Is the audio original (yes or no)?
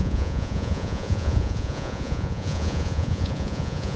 no